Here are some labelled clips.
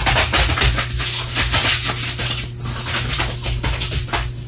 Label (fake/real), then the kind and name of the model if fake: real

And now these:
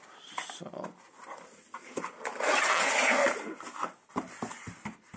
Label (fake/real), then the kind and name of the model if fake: real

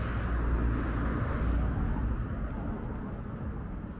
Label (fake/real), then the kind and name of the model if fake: real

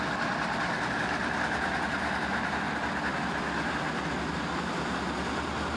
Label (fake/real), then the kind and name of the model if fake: real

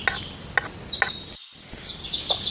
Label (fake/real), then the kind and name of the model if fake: real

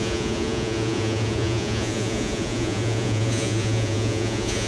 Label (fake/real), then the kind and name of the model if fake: fake, vocoder, Vocos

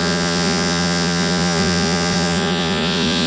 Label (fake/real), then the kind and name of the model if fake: fake, vocoder, Vocos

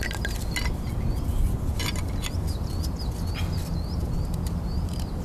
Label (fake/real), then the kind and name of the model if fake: real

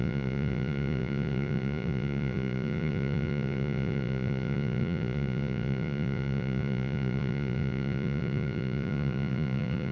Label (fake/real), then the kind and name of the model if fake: fake, vocoder, Vocos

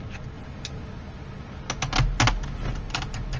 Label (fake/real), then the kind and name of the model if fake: real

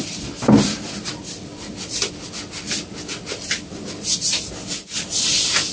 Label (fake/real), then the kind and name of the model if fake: real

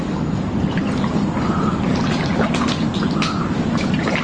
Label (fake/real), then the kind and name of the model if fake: real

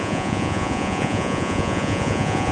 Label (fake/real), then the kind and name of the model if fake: fake, vocoder, Vocos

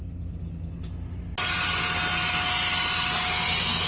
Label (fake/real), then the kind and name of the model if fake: real